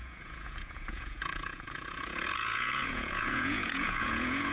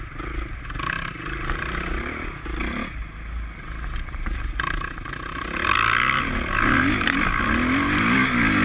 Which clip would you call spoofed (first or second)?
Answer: first